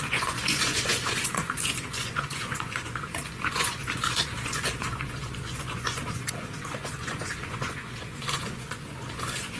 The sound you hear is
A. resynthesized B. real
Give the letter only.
A